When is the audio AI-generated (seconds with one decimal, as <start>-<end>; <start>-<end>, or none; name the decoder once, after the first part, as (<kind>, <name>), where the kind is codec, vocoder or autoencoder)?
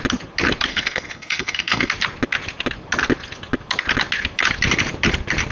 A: 0.7-1.9 (codec, SNAC)